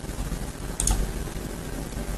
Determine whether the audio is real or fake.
real